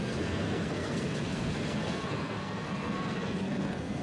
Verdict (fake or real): fake